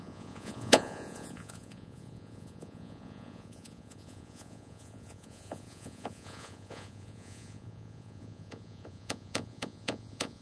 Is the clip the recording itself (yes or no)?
no